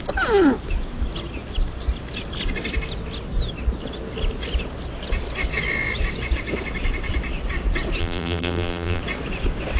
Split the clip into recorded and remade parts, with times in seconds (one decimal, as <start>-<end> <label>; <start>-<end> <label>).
0.0-8.0 recorded; 8.0-9.0 remade; 9.0-9.8 recorded